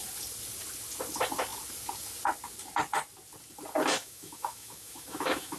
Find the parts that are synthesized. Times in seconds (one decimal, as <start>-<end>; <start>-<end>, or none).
4.0-5.6